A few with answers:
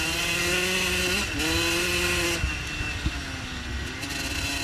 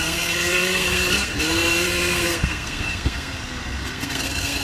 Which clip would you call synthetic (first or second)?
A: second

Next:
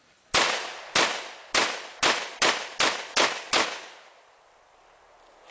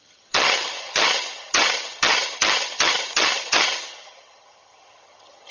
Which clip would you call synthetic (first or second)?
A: second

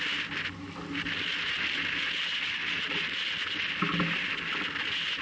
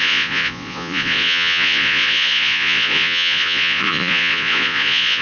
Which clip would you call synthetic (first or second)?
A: second